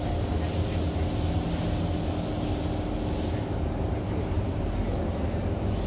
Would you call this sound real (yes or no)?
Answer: yes